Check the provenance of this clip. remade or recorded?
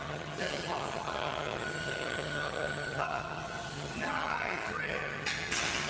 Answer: remade